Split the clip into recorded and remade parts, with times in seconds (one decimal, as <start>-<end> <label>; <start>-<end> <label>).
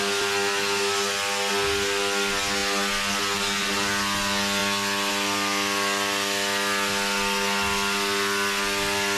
0.0-9.2 recorded